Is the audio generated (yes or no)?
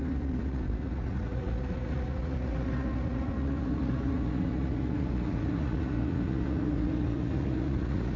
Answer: yes